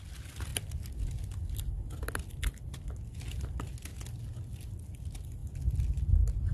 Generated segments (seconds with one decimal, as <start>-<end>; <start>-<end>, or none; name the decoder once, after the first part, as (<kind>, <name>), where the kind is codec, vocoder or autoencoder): none